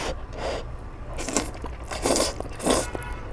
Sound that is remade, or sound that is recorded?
recorded